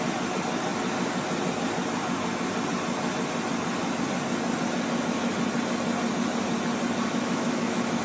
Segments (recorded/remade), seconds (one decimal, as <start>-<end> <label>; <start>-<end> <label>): 0.0-7.1 recorded; 7.1-8.0 remade

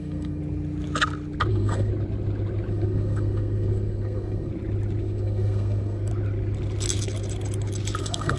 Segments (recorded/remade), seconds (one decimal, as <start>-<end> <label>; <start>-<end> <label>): 0.0-0.4 remade; 0.4-1.5 recorded; 1.5-1.9 remade; 1.9-2.7 recorded; 2.7-4.5 remade; 4.5-5.0 recorded; 5.0-6.1 remade; 6.1-8.0 recorded; 8.0-8.4 remade

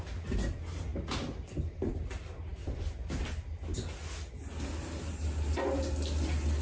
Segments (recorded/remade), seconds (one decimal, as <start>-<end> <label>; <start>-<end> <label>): 0.0-6.6 recorded

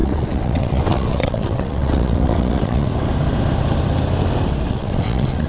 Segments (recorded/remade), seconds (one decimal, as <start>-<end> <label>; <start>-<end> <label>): 0.0-2.9 remade; 2.9-4.7 recorded; 4.7-5.5 remade

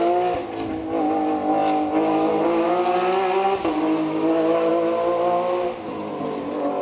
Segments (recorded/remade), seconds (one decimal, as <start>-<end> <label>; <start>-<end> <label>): 0.0-6.8 recorded

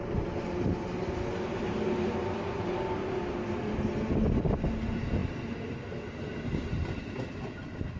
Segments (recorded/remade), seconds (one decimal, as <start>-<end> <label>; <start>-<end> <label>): 0.0-8.0 recorded